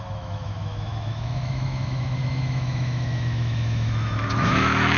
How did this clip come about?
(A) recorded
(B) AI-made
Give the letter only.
B